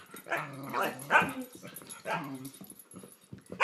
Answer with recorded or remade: recorded